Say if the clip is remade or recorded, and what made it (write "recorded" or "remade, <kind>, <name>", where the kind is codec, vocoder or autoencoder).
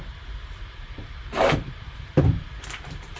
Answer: remade, vocoder, BigVGAN v2